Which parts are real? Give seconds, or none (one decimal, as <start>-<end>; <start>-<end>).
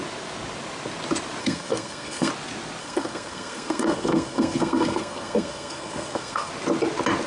0.0-1.4; 2.3-2.8; 6.5-7.3